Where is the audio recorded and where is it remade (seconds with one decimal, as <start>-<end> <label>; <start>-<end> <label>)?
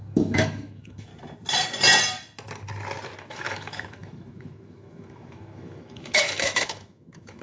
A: 0.0-1.1 remade; 1.1-3.2 recorded; 3.2-7.4 remade